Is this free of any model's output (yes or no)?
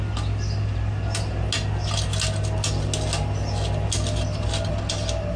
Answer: yes